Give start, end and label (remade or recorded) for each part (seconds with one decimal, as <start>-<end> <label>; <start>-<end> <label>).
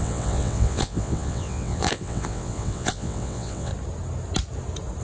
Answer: 0.0-3.7 remade; 3.7-5.0 recorded